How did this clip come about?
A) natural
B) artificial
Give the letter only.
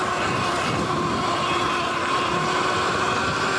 A